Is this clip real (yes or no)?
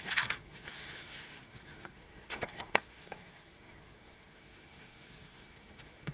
no